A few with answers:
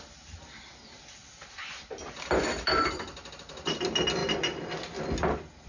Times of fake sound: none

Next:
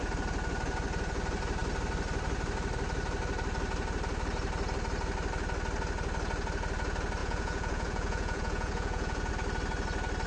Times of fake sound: 7.2-9.3 (vocoder, Vocos)

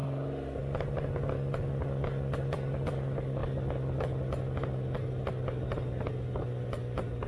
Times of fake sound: none

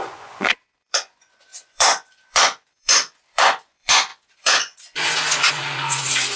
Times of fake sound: 0.0-6.4 (vocoder, Vocos)